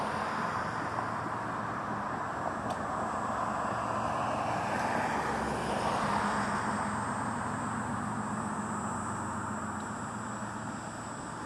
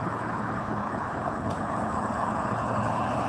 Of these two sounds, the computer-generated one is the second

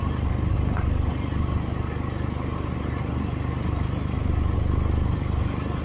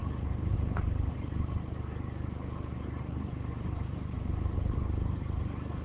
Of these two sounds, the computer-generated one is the second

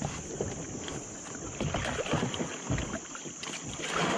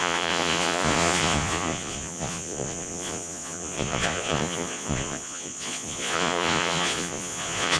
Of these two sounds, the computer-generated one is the second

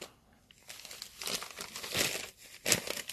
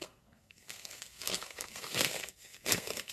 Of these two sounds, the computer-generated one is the second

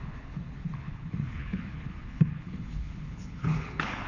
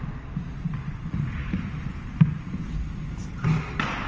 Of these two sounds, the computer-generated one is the first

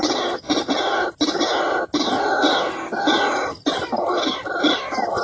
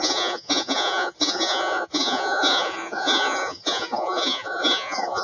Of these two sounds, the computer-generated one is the second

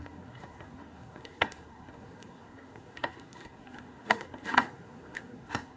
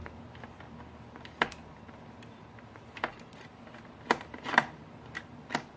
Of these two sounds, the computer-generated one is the first